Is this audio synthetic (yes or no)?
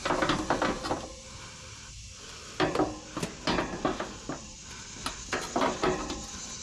no